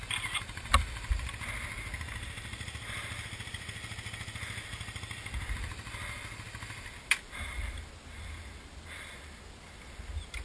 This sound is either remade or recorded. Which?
recorded